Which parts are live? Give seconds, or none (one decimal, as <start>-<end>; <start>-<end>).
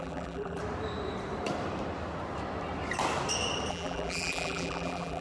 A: 0.6-3.7